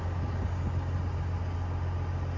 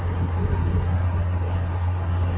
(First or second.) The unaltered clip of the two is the first